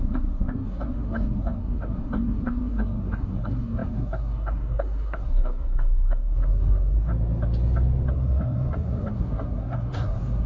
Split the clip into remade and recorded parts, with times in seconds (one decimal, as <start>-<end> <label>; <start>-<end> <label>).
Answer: 0.0-7.1 remade; 7.1-8.1 recorded; 8.1-10.5 remade